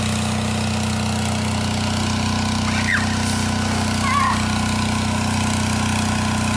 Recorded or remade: recorded